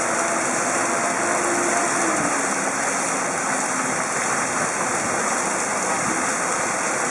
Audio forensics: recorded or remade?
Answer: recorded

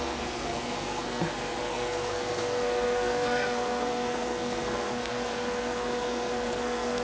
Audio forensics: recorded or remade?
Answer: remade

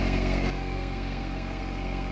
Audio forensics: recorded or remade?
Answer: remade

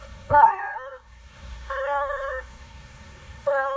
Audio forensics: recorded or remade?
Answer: remade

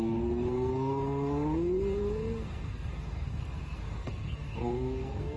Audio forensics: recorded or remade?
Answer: remade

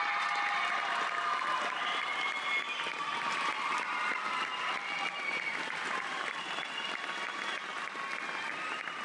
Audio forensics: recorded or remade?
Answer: recorded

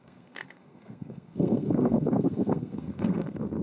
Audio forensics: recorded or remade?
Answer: remade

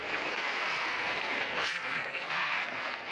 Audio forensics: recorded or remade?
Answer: remade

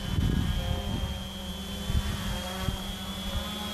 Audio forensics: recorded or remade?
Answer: recorded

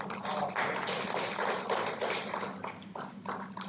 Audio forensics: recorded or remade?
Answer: recorded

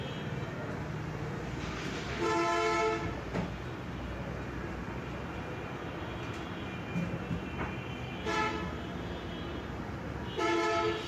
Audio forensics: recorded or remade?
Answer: recorded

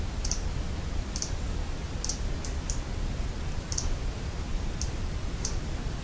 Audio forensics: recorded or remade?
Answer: recorded